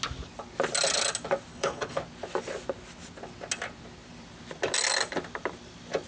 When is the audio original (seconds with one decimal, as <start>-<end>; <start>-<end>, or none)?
0.0-1.5; 2.0-6.1